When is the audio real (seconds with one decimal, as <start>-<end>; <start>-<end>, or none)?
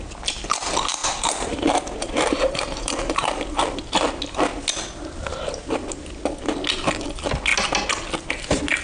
0.0-1.0; 3.6-8.8